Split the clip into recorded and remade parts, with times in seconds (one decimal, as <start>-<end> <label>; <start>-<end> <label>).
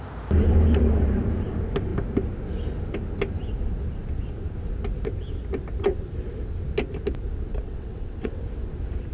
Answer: 0.0-7.5 recorded; 7.5-8.4 remade; 8.4-9.1 recorded